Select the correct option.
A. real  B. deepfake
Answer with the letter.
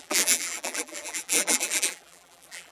B